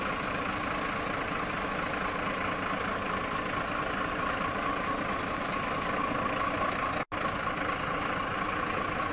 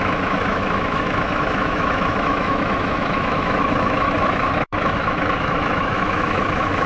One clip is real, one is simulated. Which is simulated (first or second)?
second